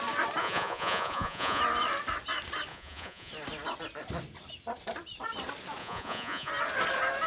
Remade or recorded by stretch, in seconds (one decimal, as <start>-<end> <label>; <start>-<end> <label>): 0.0-0.4 recorded; 0.4-1.6 remade; 1.6-2.7 recorded; 2.7-3.3 remade; 3.3-5.8 recorded; 5.8-6.5 remade; 6.5-7.3 recorded